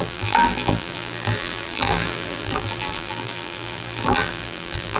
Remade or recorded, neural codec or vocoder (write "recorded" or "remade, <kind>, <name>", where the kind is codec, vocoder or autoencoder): remade, vocoder, BigVGAN v2